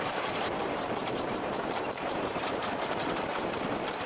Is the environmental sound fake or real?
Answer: fake